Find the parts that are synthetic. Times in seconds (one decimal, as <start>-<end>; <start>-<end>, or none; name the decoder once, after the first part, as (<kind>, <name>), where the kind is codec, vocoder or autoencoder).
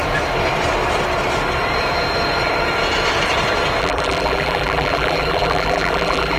3.8-6.4 (vocoder, BigVGAN v2)